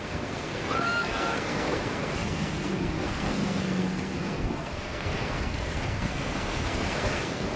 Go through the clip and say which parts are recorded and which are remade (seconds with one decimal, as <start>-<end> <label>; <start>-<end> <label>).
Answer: 0.0-7.6 remade